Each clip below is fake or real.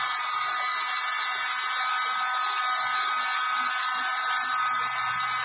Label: real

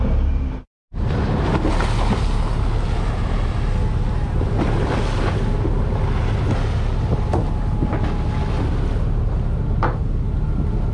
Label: real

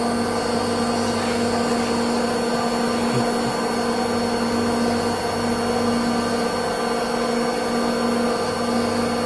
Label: real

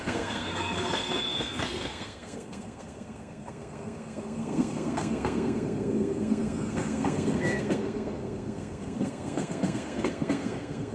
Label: fake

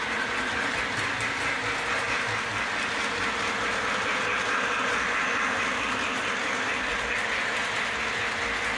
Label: real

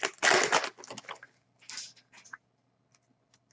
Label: real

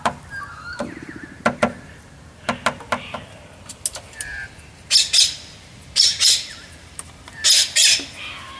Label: real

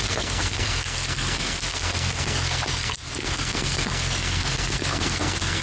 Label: fake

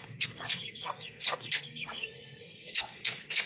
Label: fake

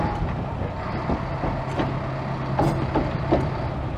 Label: real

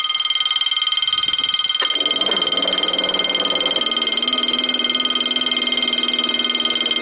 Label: real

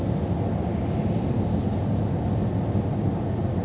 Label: real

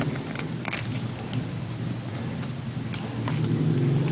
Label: real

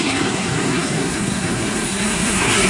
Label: fake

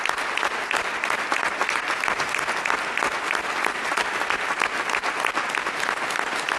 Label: real